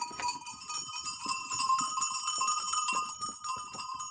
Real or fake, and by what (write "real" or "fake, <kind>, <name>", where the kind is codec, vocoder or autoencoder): real